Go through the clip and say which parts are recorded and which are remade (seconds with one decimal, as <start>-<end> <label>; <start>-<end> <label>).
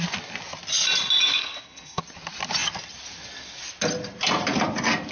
0.0-1.3 recorded; 1.3-2.0 remade; 2.0-5.1 recorded